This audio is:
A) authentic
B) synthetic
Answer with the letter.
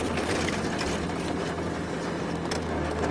A